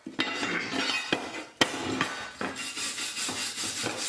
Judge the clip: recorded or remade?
recorded